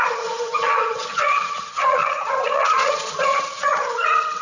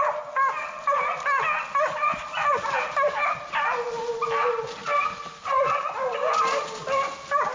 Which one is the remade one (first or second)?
first